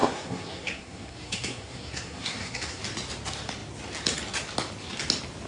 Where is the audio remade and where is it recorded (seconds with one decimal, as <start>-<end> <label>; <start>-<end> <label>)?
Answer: 0.0-2.8 remade; 2.8-5.5 recorded